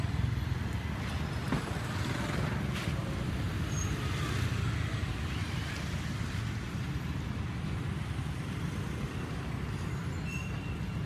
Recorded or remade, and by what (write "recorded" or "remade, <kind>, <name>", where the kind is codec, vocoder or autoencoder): recorded